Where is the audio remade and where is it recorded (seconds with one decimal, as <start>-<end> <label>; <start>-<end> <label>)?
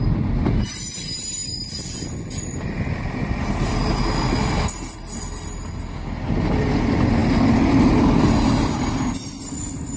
0.0-10.0 recorded